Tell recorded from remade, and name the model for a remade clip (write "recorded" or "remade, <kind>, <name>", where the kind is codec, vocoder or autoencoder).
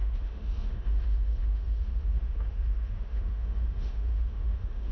remade, autoencoder, DAC-VAE